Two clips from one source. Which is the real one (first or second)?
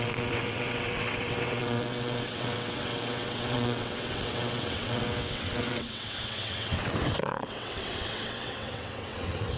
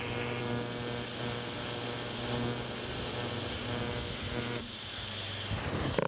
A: second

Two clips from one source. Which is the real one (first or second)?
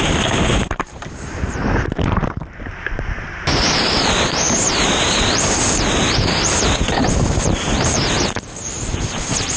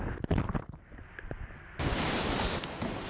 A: second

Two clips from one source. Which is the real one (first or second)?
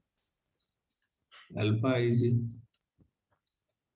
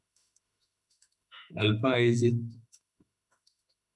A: first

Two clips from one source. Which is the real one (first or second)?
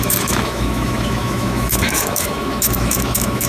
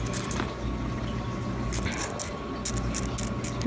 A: second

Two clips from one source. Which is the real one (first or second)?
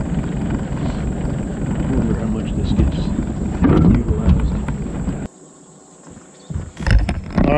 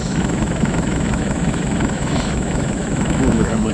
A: first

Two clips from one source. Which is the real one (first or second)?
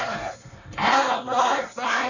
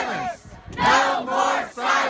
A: second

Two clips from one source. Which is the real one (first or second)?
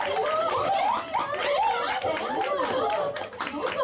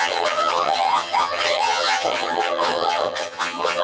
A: first